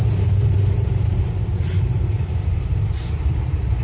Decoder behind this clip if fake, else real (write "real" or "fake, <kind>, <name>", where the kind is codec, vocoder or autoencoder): fake, vocoder, BigVGAN v2